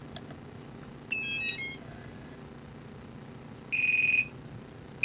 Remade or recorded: recorded